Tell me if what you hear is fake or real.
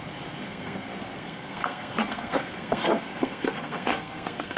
fake